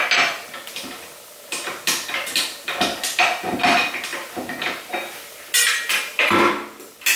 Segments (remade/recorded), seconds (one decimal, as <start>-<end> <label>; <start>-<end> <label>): 0.0-3.1 recorded; 3.1-3.6 remade; 3.6-7.2 recorded